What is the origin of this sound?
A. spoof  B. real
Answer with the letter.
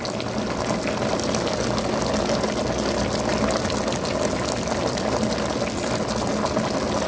B